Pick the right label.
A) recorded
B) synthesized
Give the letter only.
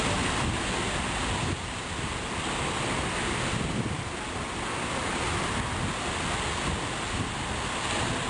A